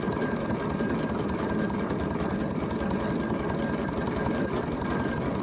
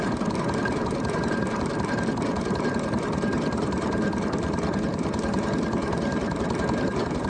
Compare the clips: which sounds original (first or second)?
first